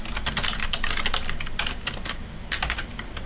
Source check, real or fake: real